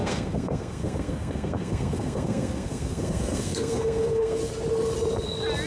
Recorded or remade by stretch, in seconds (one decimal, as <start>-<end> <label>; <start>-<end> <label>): 0.0-4.4 remade; 4.4-5.7 recorded